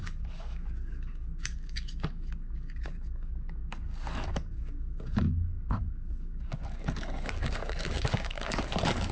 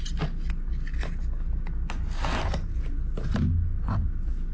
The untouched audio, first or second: second